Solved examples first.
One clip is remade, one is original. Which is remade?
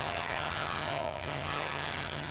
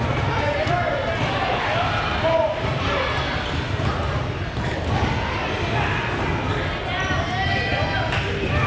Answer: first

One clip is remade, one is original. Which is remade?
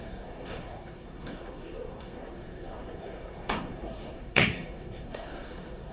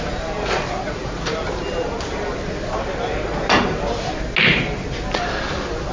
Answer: first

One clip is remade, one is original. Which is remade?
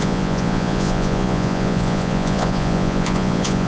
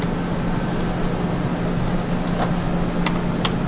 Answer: first